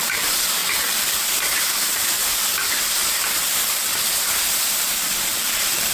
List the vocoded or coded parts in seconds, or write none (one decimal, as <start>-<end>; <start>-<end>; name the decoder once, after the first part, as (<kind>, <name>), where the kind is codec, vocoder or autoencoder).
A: 0.0-2.2 (vocoder, BigVGAN v2); 3.3-3.9; 4.4-5.9